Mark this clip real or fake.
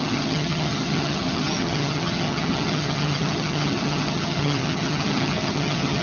fake